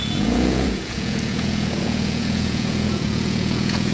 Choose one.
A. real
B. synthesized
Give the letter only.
B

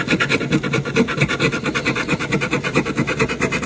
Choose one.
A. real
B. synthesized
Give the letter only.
A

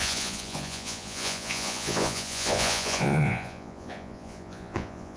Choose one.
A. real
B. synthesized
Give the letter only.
B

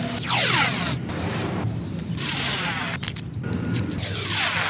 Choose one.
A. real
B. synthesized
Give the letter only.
A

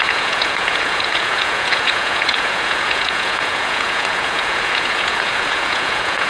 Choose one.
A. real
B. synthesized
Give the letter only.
B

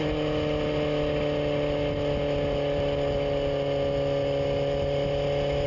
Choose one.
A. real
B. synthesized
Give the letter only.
A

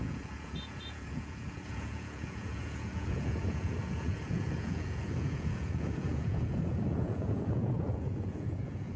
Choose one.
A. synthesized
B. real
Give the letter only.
A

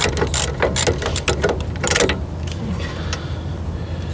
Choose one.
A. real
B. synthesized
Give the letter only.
A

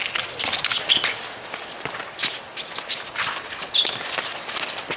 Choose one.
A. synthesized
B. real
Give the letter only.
B